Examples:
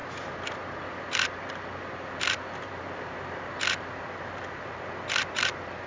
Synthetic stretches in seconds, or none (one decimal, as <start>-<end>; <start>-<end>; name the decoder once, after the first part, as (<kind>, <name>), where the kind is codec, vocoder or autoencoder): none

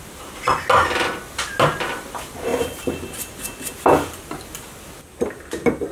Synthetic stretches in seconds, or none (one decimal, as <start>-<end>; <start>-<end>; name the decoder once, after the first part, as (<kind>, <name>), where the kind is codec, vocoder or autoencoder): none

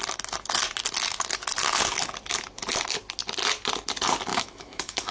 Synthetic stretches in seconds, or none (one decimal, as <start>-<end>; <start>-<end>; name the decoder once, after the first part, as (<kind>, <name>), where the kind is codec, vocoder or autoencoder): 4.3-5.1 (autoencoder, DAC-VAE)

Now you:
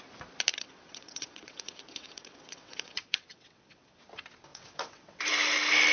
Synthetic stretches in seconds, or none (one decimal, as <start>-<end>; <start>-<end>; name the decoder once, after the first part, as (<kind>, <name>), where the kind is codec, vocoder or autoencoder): 0.5-4.0 (vocoder, WaveNeXt); 4.5-5.2

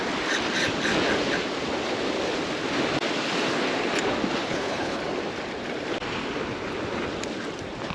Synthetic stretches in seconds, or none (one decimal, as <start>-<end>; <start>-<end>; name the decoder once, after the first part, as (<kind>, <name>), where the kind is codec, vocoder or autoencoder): 4.4-5.0 (codec, HILCodec)